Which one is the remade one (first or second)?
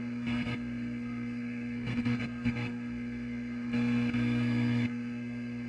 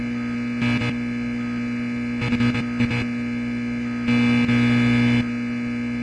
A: first